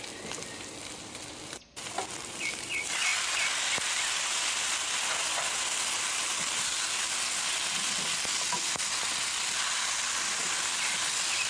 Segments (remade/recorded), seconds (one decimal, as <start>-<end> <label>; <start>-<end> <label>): 0.0-11.5 recorded